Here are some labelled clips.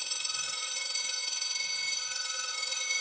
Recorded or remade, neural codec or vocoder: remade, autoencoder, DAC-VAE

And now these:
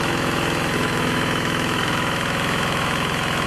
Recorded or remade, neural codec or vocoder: remade, autoencoder, DAC-VAE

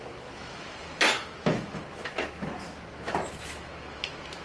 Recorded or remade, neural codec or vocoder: remade, autoencoder, DAC-VAE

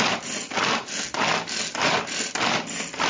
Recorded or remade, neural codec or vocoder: recorded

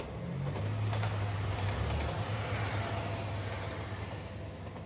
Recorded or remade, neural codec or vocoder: recorded